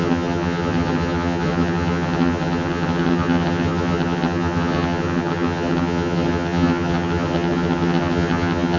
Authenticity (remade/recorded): remade